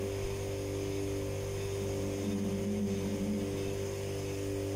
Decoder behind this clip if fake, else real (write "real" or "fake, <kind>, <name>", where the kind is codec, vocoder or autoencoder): real